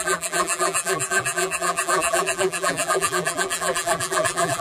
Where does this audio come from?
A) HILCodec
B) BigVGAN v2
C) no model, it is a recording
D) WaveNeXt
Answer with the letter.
B